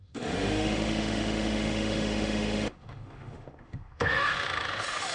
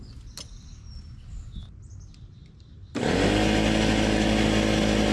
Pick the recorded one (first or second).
second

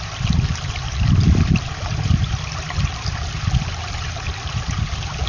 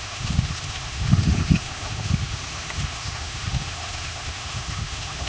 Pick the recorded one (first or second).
first